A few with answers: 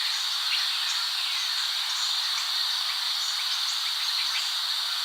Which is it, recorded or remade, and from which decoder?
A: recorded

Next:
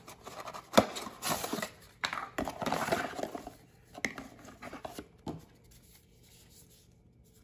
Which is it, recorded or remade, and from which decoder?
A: recorded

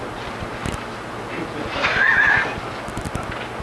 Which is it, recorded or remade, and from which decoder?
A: recorded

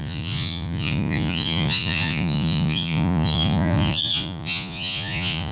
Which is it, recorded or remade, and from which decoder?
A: remade, vocoder, Vocos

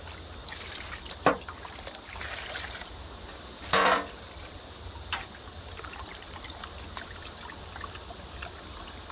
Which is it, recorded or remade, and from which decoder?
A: recorded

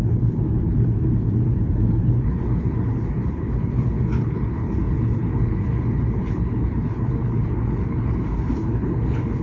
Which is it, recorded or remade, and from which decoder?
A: remade, codec, HILCodec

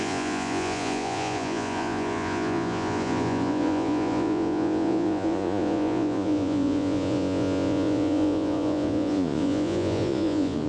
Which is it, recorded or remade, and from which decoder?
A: remade, vocoder, Vocos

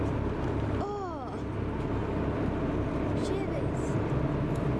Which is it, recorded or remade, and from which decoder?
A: recorded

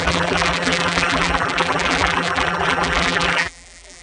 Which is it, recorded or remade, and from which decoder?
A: remade, vocoder, BigVGAN v2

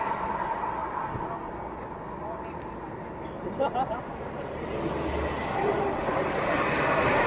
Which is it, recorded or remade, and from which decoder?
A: recorded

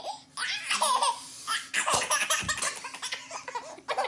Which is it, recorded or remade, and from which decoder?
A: recorded